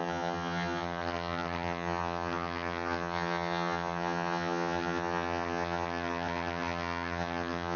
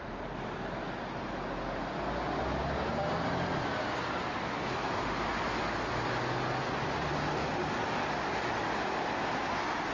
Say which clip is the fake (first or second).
first